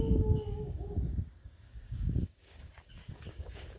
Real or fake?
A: fake